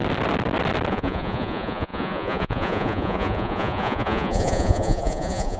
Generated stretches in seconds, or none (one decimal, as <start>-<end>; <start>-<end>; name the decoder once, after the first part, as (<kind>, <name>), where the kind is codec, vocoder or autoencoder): 0.9-5.6 (vocoder, Vocos)